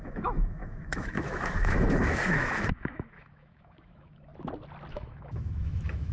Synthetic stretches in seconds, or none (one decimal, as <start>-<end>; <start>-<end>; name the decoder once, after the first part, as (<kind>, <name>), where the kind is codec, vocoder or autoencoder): 0.0-4.3 (autoencoder, DAC-VAE); 4.9-6.1